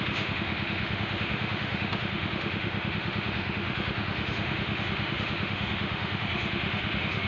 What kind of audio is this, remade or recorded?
remade